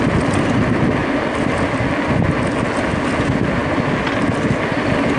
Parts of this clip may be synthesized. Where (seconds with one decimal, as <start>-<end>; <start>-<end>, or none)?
none